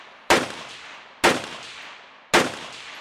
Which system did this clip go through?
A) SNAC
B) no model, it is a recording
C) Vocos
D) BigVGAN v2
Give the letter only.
B